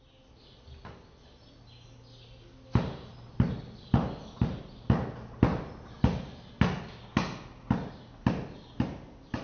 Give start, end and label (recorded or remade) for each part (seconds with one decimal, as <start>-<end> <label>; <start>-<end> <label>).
0.0-9.4 recorded